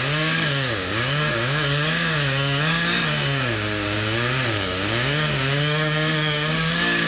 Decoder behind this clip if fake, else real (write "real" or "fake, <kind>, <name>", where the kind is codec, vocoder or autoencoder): fake, codec, DAC